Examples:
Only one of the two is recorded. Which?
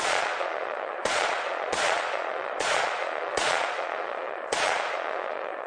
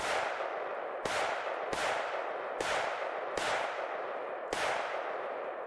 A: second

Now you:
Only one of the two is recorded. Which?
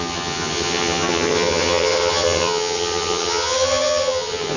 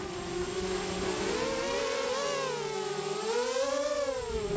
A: second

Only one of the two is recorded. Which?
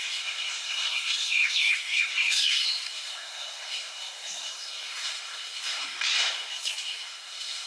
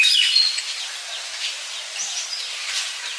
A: second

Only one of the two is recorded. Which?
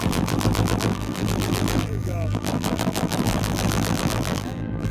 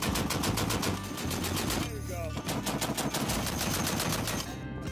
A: second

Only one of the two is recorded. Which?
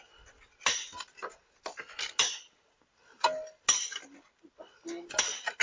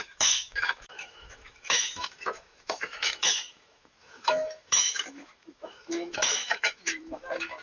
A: first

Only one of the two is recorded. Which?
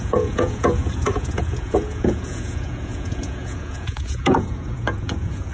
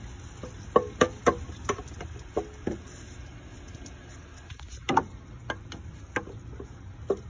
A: second